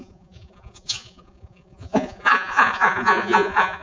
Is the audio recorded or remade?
remade